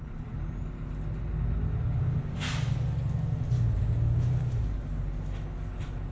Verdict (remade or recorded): recorded